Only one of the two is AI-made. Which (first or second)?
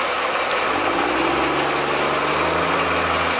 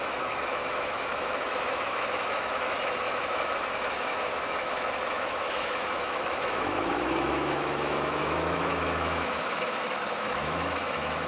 second